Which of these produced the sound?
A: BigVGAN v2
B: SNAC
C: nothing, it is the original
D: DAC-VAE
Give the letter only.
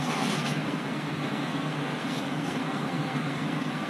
B